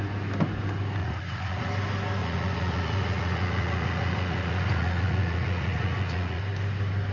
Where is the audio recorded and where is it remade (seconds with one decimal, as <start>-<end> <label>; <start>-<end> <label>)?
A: 0.0-1.0 recorded; 1.0-1.7 remade; 1.7-2.2 recorded; 2.2-6.4 remade; 6.4-7.1 recorded